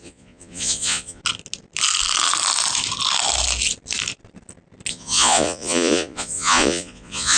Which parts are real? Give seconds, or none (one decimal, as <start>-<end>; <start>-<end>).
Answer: 1.2-4.9

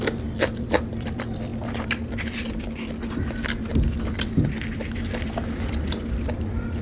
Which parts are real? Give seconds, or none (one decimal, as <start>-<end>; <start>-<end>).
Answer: 0.0-6.8

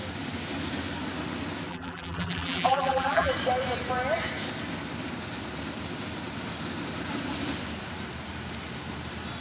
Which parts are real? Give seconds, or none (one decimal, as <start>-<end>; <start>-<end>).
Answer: 0.0-1.7; 3.3-9.4

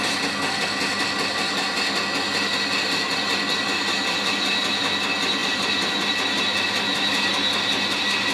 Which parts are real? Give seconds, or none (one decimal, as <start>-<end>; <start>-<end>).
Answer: 0.0-8.3

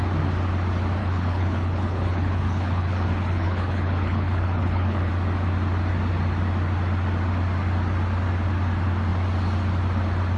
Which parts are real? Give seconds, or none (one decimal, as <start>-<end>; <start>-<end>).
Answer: 0.0-1.0; 5.1-10.4

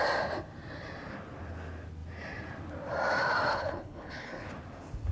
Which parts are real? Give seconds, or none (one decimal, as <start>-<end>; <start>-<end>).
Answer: 0.0-3.5; 4.5-5.1

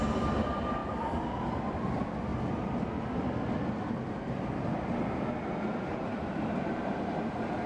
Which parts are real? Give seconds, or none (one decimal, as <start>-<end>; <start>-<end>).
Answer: 2.3-5.6